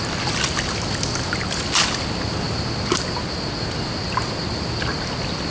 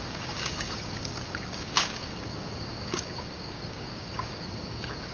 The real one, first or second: first